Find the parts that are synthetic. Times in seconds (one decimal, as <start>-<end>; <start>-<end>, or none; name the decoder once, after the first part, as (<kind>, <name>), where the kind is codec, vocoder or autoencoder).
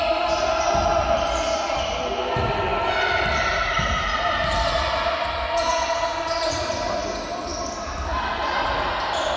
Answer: none